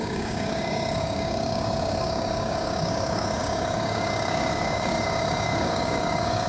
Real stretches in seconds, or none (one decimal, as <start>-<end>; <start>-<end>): none